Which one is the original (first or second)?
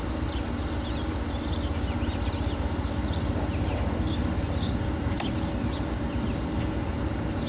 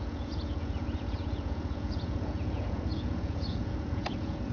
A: first